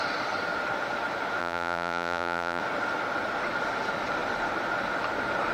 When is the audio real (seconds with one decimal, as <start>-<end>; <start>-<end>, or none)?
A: 0.0-1.4; 2.6-5.5